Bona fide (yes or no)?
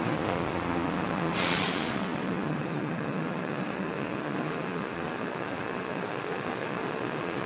no